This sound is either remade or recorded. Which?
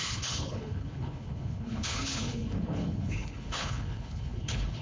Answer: remade